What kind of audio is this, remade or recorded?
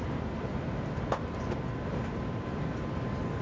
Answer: recorded